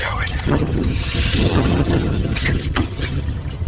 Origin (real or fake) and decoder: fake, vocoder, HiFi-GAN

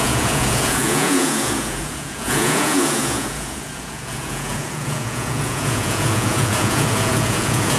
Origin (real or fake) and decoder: fake, vocoder, Vocos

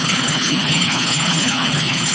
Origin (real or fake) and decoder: fake, codec, HILCodec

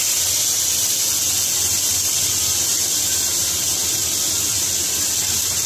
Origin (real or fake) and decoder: real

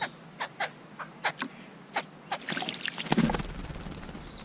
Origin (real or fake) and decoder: real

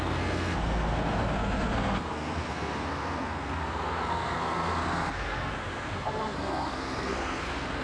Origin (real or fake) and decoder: fake, codec, SNAC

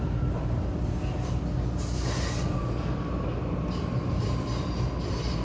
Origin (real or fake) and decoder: real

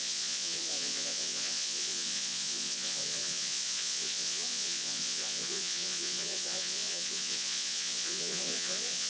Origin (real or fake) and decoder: fake, vocoder, Vocos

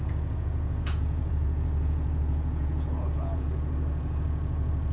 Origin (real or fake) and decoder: fake, vocoder, Vocos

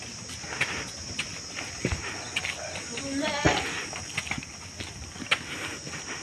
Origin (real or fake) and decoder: real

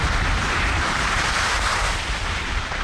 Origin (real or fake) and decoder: real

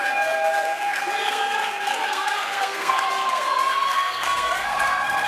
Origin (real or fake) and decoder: fake, codec, SNAC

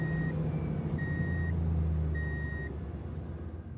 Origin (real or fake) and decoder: real